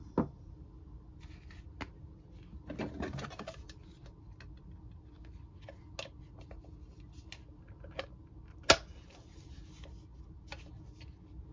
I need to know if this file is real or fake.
real